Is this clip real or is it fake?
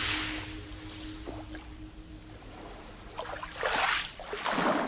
real